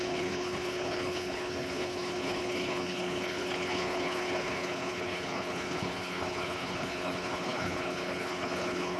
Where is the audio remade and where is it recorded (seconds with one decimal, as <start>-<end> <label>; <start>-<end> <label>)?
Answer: 0.0-9.0 remade